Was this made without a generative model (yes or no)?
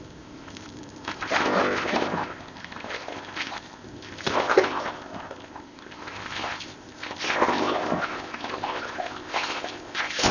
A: no